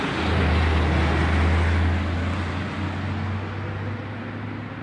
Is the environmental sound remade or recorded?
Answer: recorded